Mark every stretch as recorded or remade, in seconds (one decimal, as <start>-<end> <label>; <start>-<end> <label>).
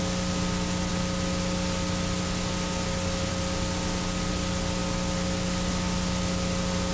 0.0-6.9 recorded